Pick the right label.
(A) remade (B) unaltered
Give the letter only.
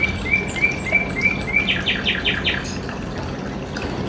B